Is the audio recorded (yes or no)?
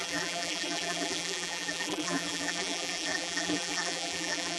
no